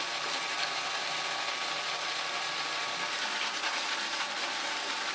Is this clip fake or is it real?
real